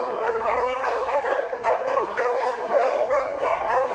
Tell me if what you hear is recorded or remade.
remade